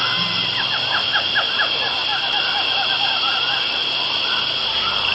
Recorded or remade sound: recorded